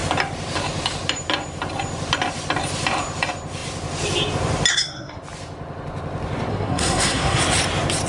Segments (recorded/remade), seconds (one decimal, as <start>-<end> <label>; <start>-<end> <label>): 0.0-4.7 recorded; 4.7-5.2 remade; 5.2-6.5 recorded; 6.5-7.4 remade; 7.4-8.1 recorded